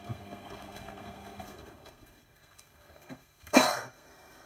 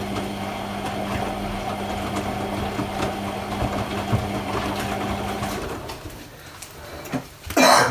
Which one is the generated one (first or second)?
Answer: first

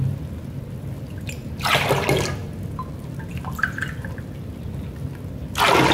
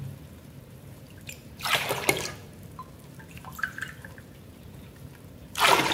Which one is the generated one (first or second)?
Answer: second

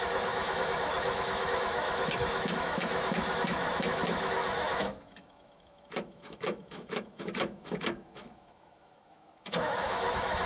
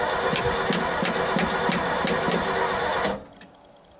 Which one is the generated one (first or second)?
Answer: first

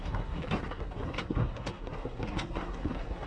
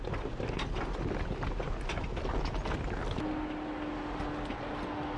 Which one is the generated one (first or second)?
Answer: first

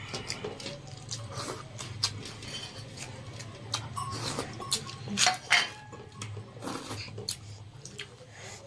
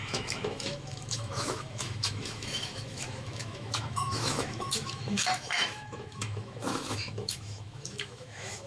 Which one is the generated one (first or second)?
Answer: second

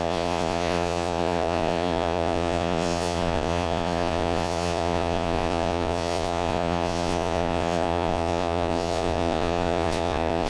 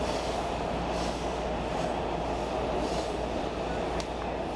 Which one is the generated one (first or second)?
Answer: first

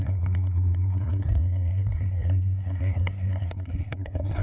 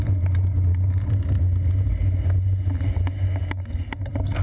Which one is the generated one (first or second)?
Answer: first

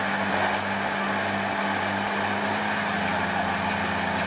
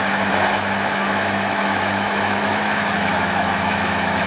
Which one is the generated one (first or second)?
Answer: second